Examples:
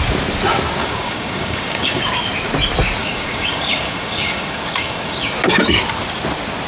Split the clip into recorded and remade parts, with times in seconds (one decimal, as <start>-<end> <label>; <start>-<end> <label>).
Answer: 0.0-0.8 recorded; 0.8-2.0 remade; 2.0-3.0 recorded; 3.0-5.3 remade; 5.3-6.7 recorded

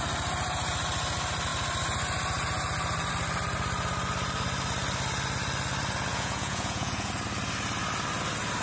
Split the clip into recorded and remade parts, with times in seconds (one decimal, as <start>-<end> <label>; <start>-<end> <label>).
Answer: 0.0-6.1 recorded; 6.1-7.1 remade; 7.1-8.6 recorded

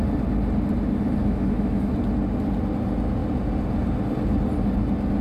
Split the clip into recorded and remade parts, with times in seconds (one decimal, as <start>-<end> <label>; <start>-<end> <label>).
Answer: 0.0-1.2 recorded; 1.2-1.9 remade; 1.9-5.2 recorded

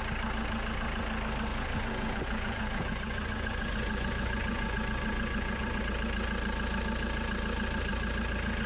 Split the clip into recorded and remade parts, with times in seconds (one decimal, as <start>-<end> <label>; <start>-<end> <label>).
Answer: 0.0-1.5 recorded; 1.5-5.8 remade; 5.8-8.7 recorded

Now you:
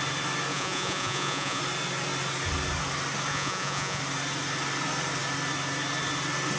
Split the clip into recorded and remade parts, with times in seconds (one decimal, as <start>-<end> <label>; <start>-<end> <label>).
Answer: 0.0-0.5 recorded; 0.5-1.6 remade; 1.6-3.3 recorded; 3.3-4.0 remade; 4.0-6.6 recorded

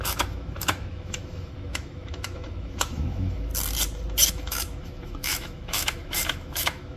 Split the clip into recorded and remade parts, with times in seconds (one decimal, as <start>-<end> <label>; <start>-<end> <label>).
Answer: 0.0-3.5 remade; 3.5-4.3 recorded; 4.3-7.0 remade

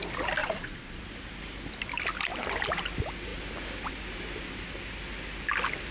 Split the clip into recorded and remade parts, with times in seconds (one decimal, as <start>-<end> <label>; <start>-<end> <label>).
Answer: 0.0-0.4 recorded; 0.4-1.0 remade; 1.0-5.9 recorded